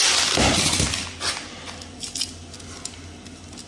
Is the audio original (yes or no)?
yes